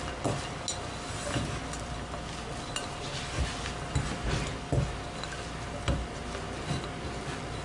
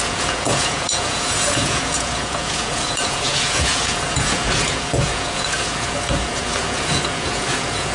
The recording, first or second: first